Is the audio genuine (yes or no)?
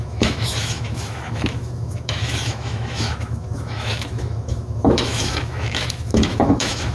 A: no